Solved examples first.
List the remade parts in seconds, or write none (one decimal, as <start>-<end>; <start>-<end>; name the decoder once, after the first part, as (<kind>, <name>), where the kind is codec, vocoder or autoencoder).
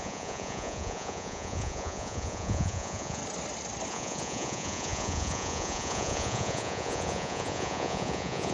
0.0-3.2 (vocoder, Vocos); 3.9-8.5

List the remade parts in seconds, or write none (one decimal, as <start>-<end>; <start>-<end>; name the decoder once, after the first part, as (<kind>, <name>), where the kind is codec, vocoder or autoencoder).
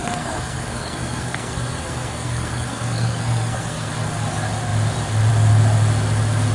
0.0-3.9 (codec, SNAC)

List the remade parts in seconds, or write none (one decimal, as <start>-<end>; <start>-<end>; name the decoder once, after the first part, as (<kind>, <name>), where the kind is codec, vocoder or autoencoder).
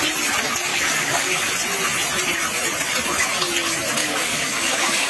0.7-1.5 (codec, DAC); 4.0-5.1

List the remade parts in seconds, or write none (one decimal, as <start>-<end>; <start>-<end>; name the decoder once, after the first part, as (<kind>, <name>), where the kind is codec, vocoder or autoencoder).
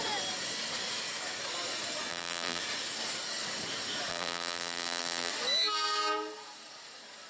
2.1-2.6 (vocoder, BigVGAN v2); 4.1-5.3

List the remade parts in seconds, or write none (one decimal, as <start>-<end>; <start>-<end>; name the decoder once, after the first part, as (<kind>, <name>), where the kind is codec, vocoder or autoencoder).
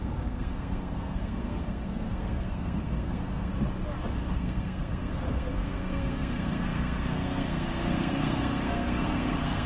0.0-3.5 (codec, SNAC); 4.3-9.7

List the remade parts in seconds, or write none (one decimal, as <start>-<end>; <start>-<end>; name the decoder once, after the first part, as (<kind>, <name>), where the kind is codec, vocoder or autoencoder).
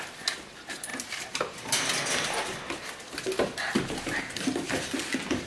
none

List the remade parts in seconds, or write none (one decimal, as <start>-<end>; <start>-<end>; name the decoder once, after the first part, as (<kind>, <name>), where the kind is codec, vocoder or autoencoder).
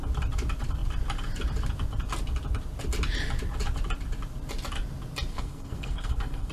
5.3-6.5 (codec, SNAC)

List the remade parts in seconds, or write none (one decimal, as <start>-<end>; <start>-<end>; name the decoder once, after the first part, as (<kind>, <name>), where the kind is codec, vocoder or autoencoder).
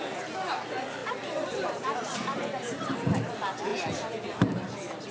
1.0-3.3 (vocoder, BigVGAN v2)